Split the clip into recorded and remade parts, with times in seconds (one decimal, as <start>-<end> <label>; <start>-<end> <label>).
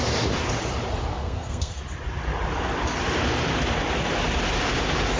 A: 0.0-1.1 recorded; 1.1-1.8 remade; 1.8-5.2 recorded